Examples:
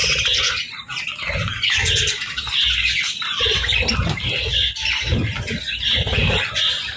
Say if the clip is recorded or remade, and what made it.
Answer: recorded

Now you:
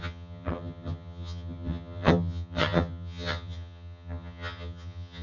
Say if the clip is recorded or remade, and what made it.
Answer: remade, vocoder, HiFi-GAN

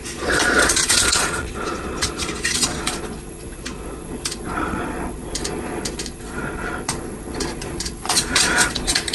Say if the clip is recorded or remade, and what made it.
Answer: remade, vocoder, Vocos